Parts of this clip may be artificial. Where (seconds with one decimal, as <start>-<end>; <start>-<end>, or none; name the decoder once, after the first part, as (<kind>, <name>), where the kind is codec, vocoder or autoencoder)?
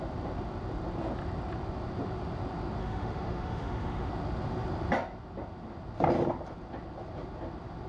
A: 2.8-4.1 (autoencoder, DAC-VAE)